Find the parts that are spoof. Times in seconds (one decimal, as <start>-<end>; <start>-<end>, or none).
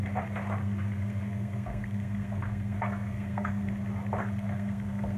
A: 0.6-3.7; 4.2-5.2